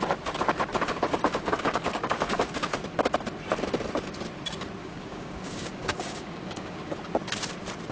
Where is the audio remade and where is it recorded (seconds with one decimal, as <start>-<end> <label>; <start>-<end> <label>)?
0.0-1.4 recorded; 1.4-2.4 remade; 2.4-4.8 recorded; 4.8-6.9 remade; 6.9-7.9 recorded